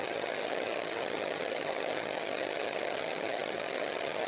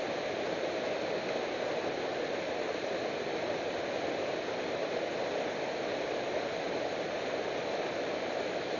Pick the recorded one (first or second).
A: second